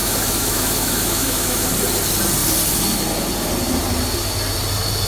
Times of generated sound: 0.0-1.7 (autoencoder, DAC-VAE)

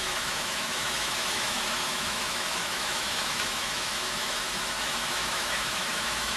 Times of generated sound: 0.0-6.4 (autoencoder, DAC-VAE)

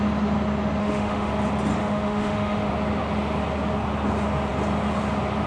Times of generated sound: 0.8-1.3 (autoencoder, DAC-VAE); 1.8-2.7

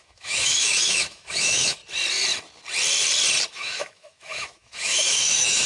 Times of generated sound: 0.0-1.8 (autoencoder, DAC-VAE); 3.5-5.7

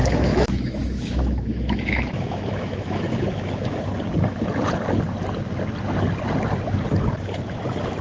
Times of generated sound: 0.0-3.8 (autoencoder, DAC-VAE)

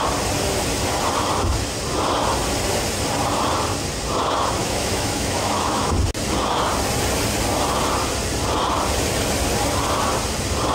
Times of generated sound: 4.6-5.9 (autoencoder, DAC-VAE)